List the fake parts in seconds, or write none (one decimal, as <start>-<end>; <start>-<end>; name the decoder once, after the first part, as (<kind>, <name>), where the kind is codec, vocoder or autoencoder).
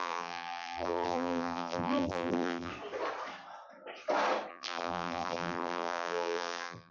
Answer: 0.0-2.7 (vocoder, BigVGAN v2); 4.5-6.9